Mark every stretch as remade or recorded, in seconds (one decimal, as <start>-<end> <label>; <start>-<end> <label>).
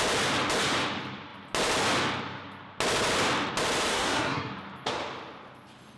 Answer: 0.0-3.9 recorded; 3.9-4.5 remade; 4.5-6.0 recorded